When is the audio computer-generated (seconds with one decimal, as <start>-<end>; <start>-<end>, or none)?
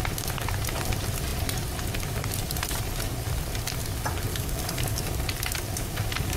4.3-5.0